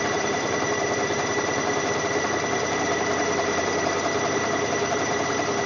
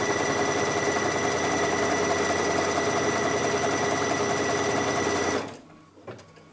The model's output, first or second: first